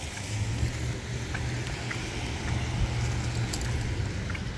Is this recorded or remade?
recorded